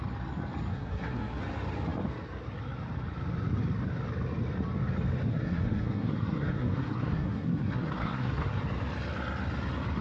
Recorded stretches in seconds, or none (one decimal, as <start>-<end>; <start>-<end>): 0.0-0.7; 1.4-5.3; 8.6-10.0